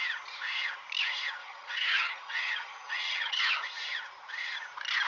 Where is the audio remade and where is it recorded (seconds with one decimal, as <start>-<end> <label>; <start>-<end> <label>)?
0.0-1.4 recorded; 1.4-3.5 remade; 3.5-5.1 recorded